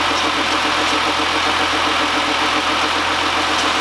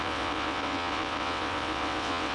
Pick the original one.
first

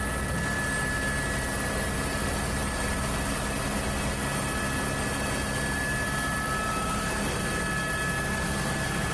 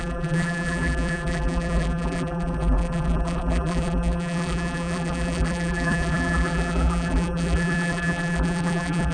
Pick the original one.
first